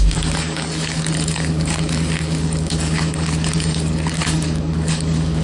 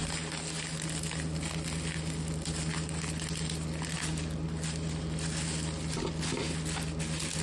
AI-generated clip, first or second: first